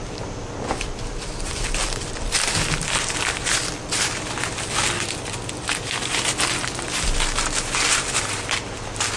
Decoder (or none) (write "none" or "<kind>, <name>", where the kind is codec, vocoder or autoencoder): none